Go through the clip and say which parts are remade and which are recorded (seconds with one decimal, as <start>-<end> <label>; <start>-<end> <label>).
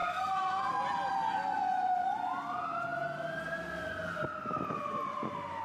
0.0-0.7 remade; 0.7-5.6 recorded